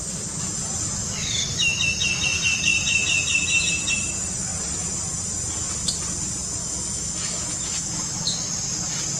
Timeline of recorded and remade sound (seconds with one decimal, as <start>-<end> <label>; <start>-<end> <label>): 0.0-1.0 recorded; 1.0-1.8 remade; 1.8-6.6 recorded; 6.6-8.5 remade; 8.5-9.2 recorded